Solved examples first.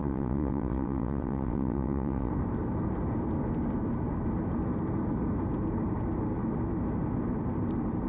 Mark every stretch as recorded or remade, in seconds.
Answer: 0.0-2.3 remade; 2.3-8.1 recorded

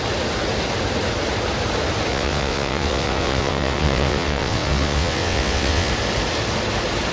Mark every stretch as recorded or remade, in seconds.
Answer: 0.0-2.1 recorded; 2.1-5.9 remade; 5.9-7.1 recorded

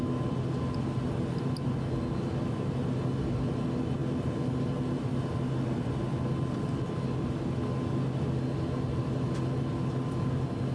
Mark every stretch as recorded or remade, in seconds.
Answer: 0.0-10.7 recorded

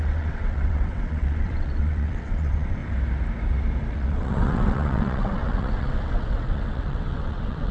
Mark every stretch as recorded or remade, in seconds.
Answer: 0.0-2.8 remade; 2.8-3.9 recorded; 3.9-7.7 remade

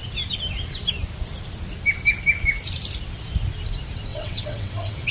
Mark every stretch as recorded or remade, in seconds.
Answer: 0.0-4.1 recorded; 4.1-5.1 remade

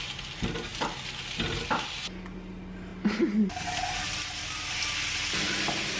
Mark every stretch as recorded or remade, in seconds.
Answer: 0.0-6.0 recorded

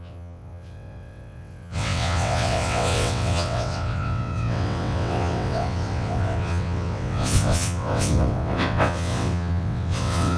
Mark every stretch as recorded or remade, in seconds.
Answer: 0.0-10.4 remade

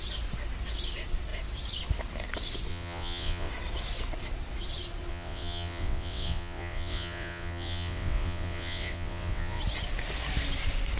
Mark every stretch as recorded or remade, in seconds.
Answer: 0.0-2.7 recorded; 2.7-3.5 remade; 3.5-5.1 recorded; 5.1-9.6 remade; 9.6-11.0 recorded